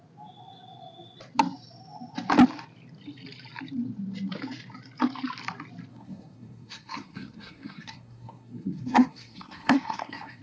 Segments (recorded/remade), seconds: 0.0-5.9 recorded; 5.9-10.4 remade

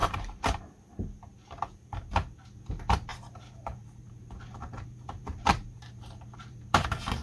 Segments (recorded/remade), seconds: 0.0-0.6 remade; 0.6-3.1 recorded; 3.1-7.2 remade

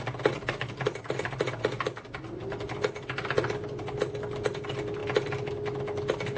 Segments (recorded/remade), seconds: 0.0-6.4 recorded

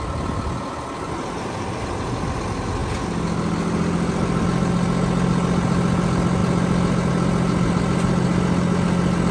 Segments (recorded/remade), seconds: 0.0-9.3 recorded

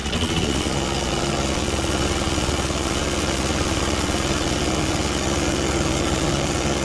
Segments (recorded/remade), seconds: 0.0-6.8 remade